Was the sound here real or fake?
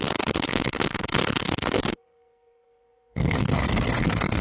fake